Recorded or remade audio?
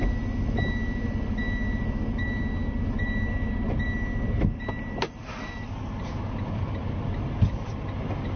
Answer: recorded